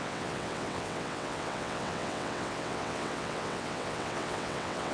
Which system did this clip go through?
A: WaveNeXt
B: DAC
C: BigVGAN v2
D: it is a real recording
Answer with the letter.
A